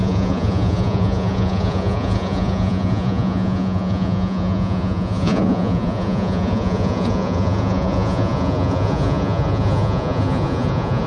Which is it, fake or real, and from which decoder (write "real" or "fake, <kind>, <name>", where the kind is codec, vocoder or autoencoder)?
fake, vocoder, Vocos